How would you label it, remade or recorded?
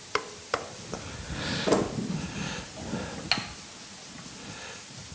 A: recorded